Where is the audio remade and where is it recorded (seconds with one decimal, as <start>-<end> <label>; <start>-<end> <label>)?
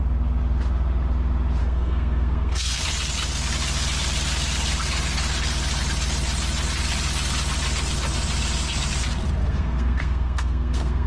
0.0-1.6 recorded; 1.6-2.8 remade; 2.8-9.4 recorded; 9.4-11.1 remade